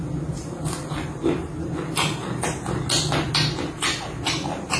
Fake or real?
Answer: real